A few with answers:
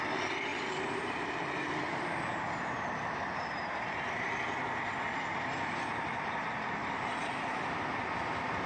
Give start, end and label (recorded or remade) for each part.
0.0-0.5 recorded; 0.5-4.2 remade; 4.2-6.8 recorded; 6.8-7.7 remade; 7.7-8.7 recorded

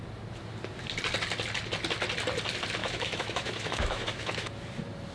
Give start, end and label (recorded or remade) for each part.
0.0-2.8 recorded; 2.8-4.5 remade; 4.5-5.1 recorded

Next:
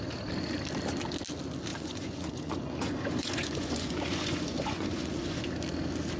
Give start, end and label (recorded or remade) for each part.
0.0-1.7 recorded; 1.7-5.4 remade; 5.4-6.2 recorded

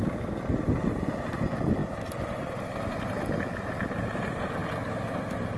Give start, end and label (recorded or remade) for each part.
0.0-5.6 recorded

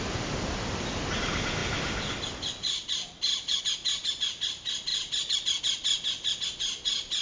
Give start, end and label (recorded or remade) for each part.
0.0-7.2 recorded

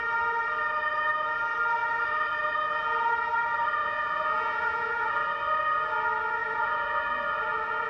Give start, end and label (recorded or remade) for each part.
0.0-3.8 recorded; 3.8-5.3 remade; 5.3-6.4 recorded; 6.4-7.0 remade; 7.0-7.9 recorded

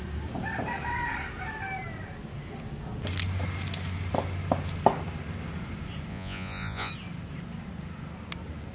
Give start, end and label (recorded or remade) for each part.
0.0-6.1 recorded; 6.1-6.9 remade; 6.9-8.7 recorded

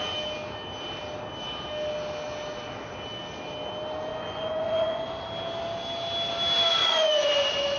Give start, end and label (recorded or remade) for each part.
0.0-4.1 recorded; 4.1-5.2 remade; 5.2-6.8 recorded; 6.8-7.8 remade